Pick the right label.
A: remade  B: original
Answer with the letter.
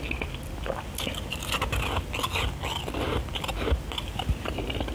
B